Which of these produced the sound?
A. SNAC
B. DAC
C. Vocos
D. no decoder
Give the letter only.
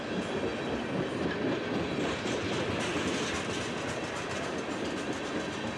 D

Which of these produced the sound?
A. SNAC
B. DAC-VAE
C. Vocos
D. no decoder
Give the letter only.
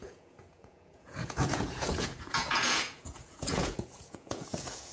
C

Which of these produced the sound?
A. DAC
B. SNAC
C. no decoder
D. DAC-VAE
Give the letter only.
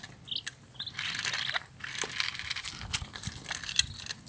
C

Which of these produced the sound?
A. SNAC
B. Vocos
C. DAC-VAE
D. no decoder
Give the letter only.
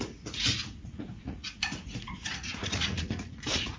B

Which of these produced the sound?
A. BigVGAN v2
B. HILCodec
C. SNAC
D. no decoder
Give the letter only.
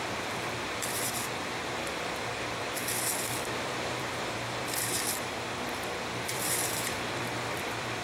A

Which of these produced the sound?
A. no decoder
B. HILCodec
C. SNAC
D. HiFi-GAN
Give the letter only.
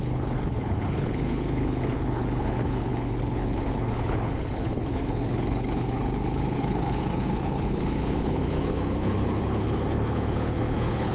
B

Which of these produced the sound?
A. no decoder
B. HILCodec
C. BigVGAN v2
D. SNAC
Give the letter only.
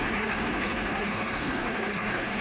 D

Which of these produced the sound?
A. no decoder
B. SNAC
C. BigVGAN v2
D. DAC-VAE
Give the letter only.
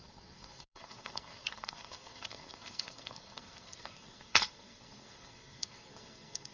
B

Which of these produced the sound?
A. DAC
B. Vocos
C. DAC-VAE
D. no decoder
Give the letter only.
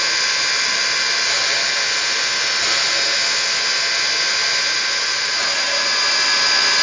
D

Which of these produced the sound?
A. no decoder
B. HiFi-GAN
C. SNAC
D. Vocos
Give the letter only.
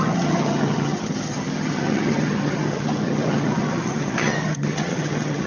B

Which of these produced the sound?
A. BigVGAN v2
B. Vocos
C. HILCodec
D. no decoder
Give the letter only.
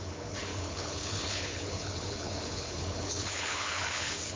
C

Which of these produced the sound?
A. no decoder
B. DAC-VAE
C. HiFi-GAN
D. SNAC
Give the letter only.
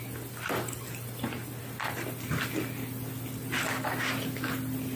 A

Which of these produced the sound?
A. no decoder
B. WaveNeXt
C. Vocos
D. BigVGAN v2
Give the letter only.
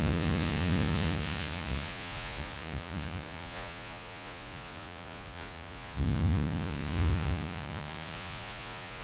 C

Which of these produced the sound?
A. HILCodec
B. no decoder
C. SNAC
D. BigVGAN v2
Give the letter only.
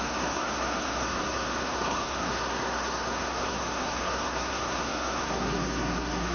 C